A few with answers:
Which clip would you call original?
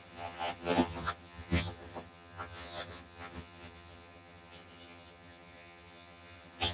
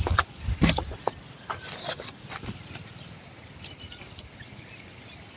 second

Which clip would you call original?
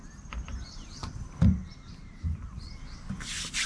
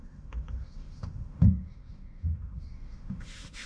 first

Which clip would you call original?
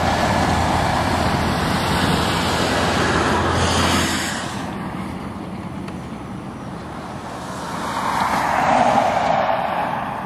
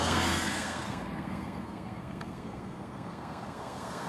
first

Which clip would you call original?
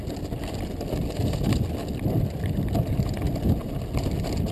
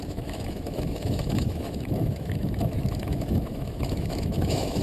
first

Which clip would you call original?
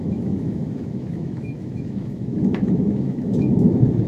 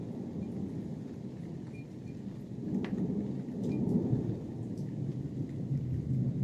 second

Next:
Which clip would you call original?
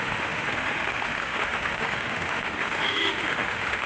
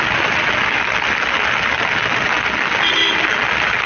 second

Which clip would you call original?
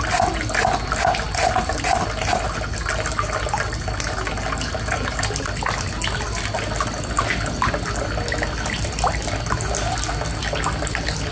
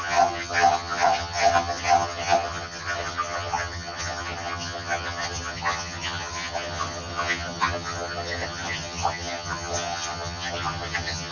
first